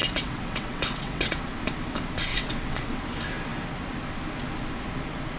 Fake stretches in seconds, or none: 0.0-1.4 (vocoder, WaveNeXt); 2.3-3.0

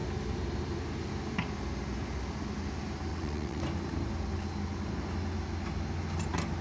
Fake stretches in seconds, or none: 3.1-3.6 (vocoder, WaveNeXt)

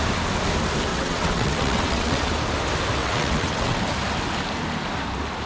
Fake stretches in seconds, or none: 0.9-2.2 (vocoder, WaveNeXt); 3.0-3.8

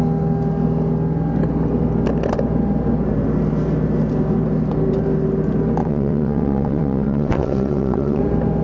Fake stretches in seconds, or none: 5.8-8.2 (vocoder, WaveNeXt)

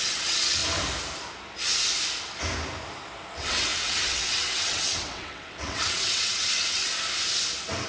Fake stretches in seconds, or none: 0.0-0.6 (vocoder, WaveNeXt); 3.3-6.9